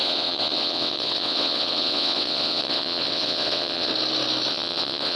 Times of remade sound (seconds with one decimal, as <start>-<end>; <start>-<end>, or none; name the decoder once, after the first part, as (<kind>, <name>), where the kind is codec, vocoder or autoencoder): 0.0-3.9 (vocoder, WaveNeXt); 4.5-5.2